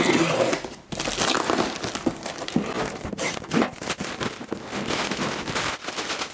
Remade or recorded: recorded